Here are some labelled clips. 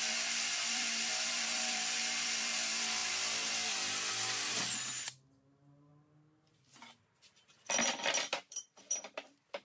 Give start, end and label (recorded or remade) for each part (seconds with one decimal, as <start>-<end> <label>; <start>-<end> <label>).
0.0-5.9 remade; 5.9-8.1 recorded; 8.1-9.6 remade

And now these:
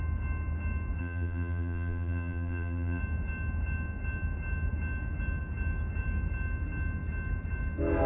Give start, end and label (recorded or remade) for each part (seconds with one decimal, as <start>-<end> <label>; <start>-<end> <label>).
0.0-1.0 recorded; 1.0-3.0 remade; 3.0-8.1 recorded

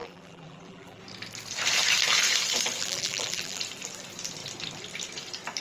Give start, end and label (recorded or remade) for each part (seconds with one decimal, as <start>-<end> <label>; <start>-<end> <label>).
0.0-1.0 remade; 1.0-2.8 recorded; 2.8-3.6 remade; 3.6-5.6 recorded

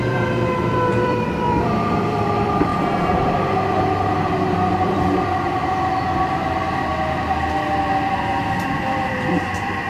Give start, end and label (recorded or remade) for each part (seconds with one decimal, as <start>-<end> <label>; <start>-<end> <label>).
0.0-2.7 remade; 2.7-4.7 recorded; 4.7-6.9 remade; 6.9-8.8 recorded; 8.8-9.9 remade

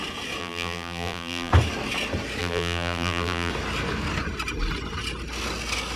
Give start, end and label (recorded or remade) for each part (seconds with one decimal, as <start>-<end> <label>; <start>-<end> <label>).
0.0-0.4 recorded; 0.4-1.5 remade; 1.5-2.4 recorded; 2.4-3.5 remade; 3.5-6.0 recorded

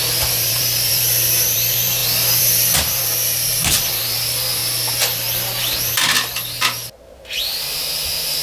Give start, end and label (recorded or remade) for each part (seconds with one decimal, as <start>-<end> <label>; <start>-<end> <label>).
0.0-4.6 remade; 4.6-7.4 recorded; 7.4-8.4 remade